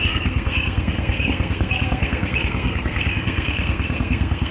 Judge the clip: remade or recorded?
remade